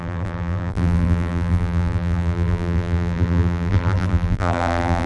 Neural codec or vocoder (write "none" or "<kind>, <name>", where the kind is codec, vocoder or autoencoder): vocoder, BigVGAN v2